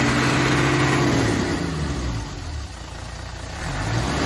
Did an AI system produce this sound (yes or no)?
no